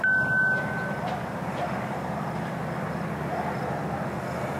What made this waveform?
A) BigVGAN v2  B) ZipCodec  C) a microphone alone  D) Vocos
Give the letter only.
C